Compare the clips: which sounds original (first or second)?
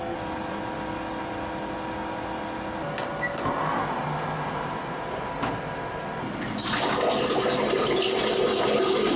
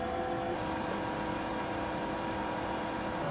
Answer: first